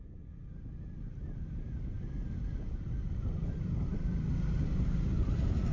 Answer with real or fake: real